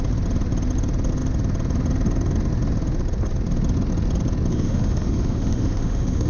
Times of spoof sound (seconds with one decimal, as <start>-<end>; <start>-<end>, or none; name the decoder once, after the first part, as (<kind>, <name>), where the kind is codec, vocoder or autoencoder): 4.5-6.3 (autoencoder, DAC-VAE)